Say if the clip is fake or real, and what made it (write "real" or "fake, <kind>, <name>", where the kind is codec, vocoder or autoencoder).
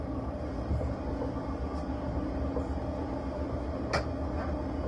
real